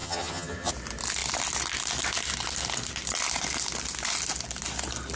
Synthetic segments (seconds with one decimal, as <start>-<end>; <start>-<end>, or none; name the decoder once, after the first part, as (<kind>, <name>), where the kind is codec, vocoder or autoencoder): 0.0-0.7 (vocoder, HiFi-GAN)